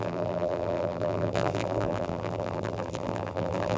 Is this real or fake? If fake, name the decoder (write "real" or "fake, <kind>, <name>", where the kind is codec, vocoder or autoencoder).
fake, vocoder, BigVGAN v2